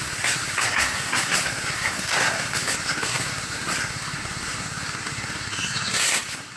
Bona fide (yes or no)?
no